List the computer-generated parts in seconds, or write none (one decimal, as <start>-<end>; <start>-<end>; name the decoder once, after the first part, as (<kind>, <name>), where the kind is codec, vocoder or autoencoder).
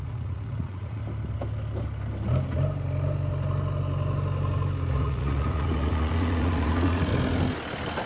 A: 0.0-1.0 (vocoder, Vocos); 4.9-7.1